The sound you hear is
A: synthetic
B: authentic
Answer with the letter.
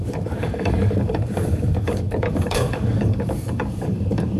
A